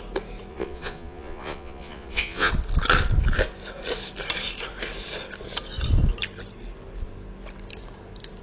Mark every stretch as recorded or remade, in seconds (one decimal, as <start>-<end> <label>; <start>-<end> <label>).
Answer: 0.0-0.5 recorded; 0.5-2.5 remade; 2.5-8.4 recorded